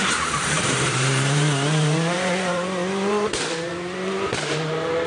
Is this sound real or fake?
fake